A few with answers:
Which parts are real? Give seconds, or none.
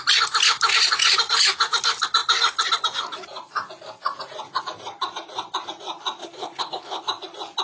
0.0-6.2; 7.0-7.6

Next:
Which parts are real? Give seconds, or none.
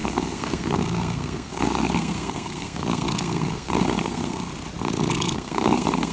4.5-5.1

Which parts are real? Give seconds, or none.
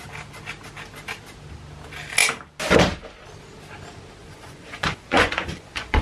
0.0-4.2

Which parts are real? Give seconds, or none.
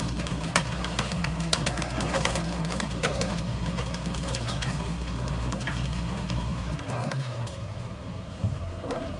none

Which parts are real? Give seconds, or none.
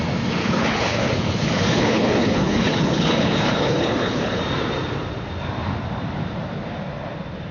0.0-0.4; 4.4-7.5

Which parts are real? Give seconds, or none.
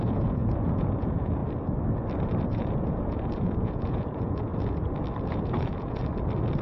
1.4-2.5; 4.5-5.3; 6.0-6.6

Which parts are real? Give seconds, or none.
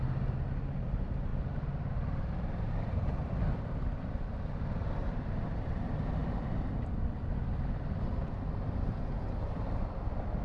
0.0-1.3; 2.7-3.2; 4.3-5.0; 5.8-6.2; 8.3-10.4